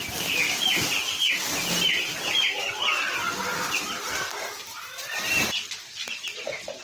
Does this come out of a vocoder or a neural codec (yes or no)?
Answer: no